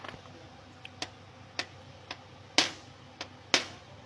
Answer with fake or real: real